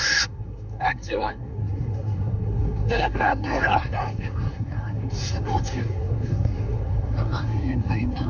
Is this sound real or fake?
fake